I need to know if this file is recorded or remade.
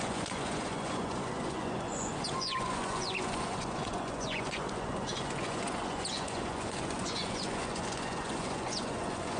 remade